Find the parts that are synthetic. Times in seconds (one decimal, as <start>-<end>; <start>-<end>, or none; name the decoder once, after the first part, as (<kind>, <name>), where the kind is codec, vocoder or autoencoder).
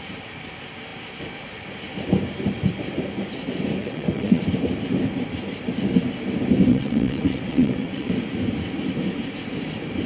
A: 3.8-4.4 (vocoder, WaveNeXt); 6.7-8.1